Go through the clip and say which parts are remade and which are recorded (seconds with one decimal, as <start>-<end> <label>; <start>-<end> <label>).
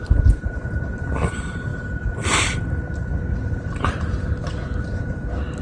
0.0-5.6 recorded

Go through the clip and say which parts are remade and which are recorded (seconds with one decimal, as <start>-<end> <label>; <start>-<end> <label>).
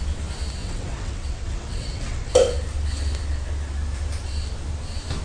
0.0-0.6 recorded; 0.6-2.3 remade; 2.3-5.2 recorded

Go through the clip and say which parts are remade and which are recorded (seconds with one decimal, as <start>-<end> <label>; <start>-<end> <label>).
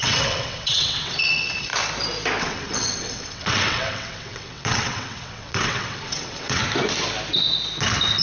0.0-1.7 remade; 1.7-2.4 recorded; 2.4-6.6 remade; 6.6-8.2 recorded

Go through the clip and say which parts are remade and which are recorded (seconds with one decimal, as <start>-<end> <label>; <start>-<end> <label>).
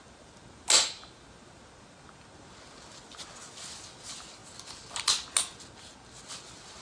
0.0-6.8 recorded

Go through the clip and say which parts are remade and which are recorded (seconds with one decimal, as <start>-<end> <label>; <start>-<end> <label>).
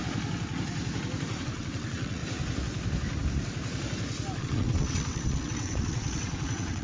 0.0-1.4 recorded; 1.4-2.2 remade; 2.2-4.4 recorded; 4.4-6.8 remade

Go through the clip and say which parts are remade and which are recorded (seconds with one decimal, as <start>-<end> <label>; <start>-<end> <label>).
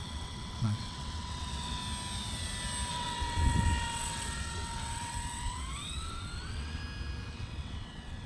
0.0-1.8 remade; 1.8-2.9 recorded; 2.9-6.8 remade; 6.8-7.3 recorded; 7.3-8.3 remade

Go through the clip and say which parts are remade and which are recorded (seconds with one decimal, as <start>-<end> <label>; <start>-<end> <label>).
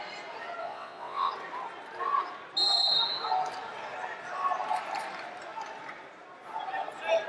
0.0-0.6 recorded; 0.6-1.3 remade; 1.3-7.3 recorded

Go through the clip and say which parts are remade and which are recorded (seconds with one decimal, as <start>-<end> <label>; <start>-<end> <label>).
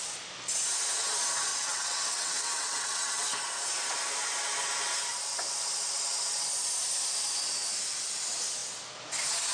0.0-1.5 recorded; 1.5-3.2 remade; 3.2-9.5 recorded